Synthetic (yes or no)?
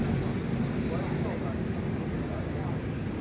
no